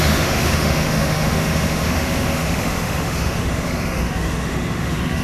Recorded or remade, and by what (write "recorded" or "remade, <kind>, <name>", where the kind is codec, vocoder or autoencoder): remade, autoencoder, DAC-VAE